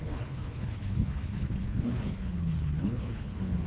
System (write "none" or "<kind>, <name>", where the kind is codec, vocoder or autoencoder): codec, HILCodec